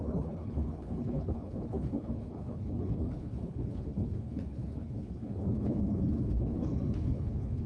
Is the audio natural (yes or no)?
no